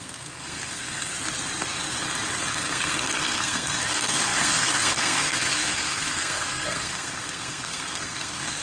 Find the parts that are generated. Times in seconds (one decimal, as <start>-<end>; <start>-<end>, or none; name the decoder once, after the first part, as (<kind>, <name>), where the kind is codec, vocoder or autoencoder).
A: 0.0-1.1 (codec, SNAC); 2.5-8.6